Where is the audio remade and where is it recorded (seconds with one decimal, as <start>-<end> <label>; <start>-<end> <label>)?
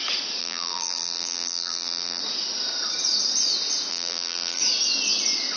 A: 0.0-0.4 recorded; 0.4-2.2 remade; 2.2-3.9 recorded; 3.9-4.6 remade; 4.6-5.6 recorded